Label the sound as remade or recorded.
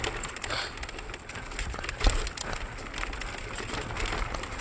recorded